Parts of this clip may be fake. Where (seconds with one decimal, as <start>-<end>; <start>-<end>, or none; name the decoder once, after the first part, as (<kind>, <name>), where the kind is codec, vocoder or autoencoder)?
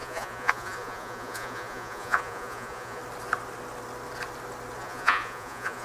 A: 0.0-3.0 (vocoder, Vocos); 4.8-5.8